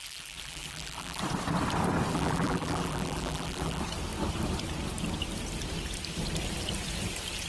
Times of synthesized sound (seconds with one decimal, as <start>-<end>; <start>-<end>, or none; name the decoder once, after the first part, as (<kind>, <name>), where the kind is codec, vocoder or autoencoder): 0.0-1.2 (vocoder, BigVGAN v2); 2.1-3.8